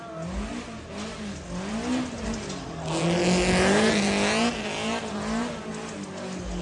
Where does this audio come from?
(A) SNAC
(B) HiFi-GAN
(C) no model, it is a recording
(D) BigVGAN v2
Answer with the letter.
C